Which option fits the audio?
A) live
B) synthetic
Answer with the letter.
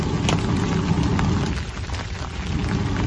A